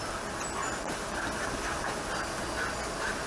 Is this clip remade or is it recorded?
recorded